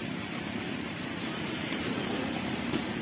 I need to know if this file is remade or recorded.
remade